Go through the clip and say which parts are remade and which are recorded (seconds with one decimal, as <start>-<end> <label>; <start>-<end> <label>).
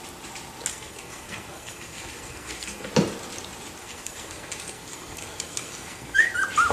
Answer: 0.0-0.7 recorded; 0.7-2.9 remade; 2.9-3.8 recorded; 3.8-6.3 remade; 6.3-6.7 recorded